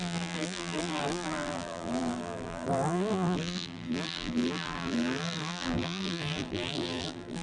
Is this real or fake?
fake